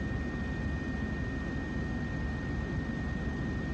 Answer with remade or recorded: recorded